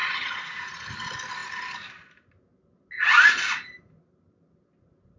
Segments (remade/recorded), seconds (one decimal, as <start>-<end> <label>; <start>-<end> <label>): 0.0-0.9 remade; 0.9-5.2 recorded